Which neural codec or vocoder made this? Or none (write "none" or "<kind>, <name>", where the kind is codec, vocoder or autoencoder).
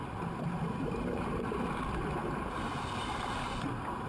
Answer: none